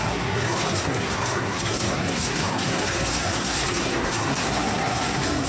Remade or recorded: remade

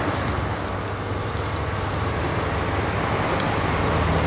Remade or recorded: recorded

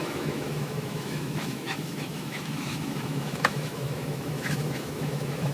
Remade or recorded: remade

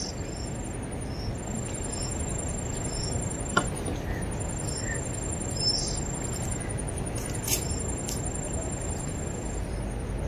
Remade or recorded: recorded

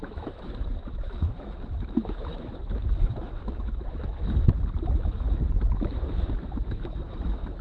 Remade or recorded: remade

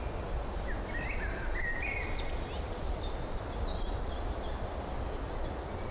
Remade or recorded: recorded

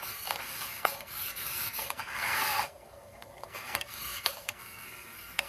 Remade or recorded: remade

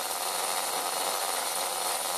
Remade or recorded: remade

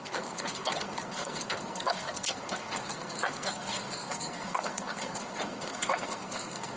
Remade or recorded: remade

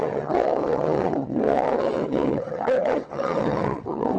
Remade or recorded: remade